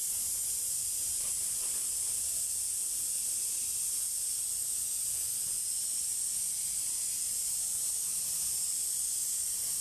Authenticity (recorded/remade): recorded